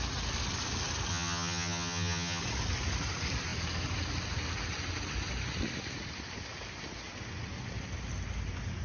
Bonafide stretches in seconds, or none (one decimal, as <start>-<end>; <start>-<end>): 0.0-1.1; 2.4-8.8